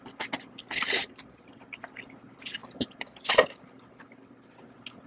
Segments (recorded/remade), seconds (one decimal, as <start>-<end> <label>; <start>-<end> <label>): 0.0-1.0 recorded; 1.0-1.5 remade; 1.5-2.6 recorded; 2.6-4.2 remade; 4.2-5.1 recorded